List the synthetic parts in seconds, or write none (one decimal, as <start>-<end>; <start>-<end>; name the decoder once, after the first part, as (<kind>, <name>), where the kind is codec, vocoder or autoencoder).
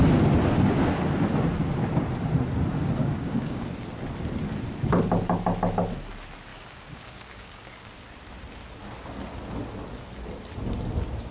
3.0-3.6 (codec, DAC); 6.5-7.9